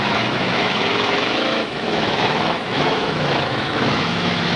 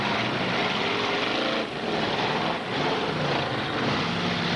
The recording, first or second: second